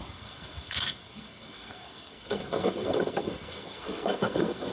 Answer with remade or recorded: remade